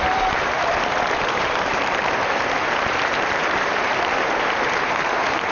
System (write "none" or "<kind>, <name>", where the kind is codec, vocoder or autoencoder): vocoder, BigVGAN v2